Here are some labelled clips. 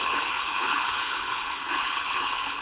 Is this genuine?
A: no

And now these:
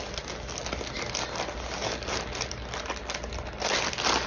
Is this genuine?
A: yes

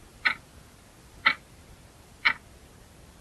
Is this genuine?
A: yes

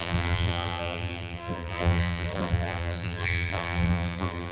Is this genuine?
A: no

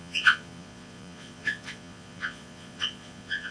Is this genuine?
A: no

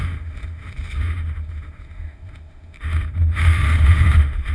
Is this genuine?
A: no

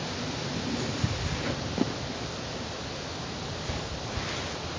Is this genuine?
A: yes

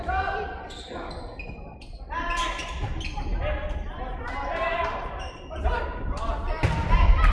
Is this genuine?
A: yes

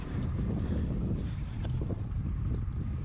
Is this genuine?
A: yes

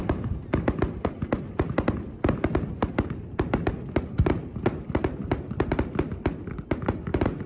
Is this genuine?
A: yes